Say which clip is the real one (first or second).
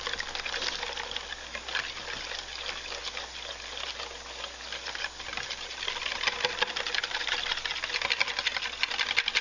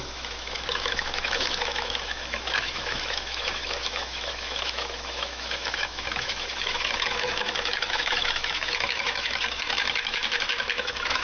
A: first